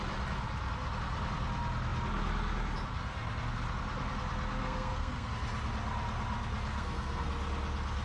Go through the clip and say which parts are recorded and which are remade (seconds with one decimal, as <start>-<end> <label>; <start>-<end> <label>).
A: 0.0-4.6 recorded; 4.6-5.3 remade; 5.3-6.7 recorded; 6.7-7.3 remade; 7.3-8.0 recorded